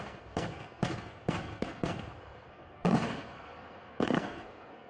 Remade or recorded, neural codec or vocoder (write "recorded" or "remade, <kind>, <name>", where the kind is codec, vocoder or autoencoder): remade, codec, SNAC